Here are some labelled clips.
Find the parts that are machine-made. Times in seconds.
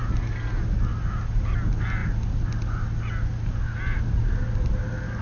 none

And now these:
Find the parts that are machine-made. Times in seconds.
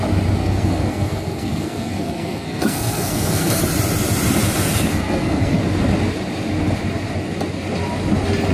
0.4-3.6; 4.9-5.6